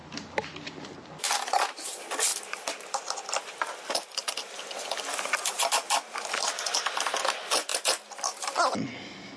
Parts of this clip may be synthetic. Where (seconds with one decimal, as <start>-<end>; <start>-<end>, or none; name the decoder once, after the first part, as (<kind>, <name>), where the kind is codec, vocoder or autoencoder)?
0.8-9.4 (vocoder, BigVGAN v2)